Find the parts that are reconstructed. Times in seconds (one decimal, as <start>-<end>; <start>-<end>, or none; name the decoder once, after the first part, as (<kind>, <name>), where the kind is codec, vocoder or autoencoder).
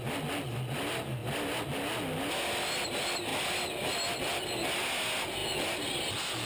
none